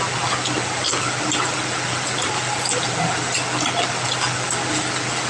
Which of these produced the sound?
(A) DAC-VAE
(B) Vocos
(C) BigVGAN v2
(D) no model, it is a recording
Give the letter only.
D